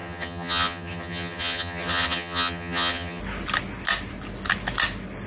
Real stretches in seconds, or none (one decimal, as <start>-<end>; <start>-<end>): 3.2-5.3